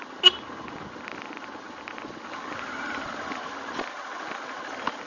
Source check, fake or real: real